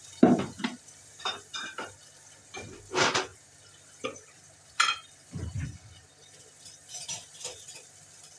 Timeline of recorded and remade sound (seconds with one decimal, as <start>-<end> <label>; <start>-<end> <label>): 0.0-2.0 remade; 2.0-3.3 recorded; 3.3-6.1 remade; 6.1-8.4 recorded